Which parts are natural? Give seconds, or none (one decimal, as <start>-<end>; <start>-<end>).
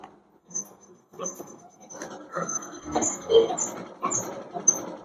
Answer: 0.0-0.4; 1.9-2.3; 3.5-5.0